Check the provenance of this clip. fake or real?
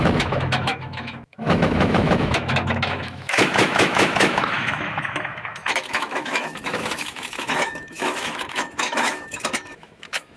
fake